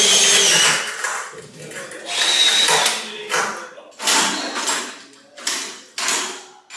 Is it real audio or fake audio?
real